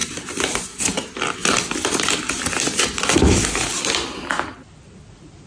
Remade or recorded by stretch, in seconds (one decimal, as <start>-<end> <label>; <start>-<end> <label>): 0.0-0.6 remade; 0.6-5.5 recorded